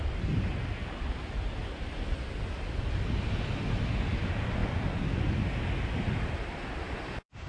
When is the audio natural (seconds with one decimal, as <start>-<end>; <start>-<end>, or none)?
0.0-7.5